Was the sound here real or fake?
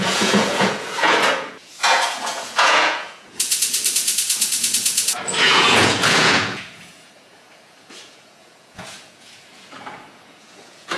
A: fake